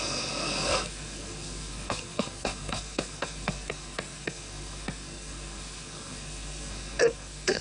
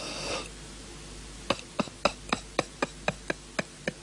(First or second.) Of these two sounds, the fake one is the first